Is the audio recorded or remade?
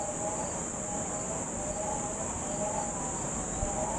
recorded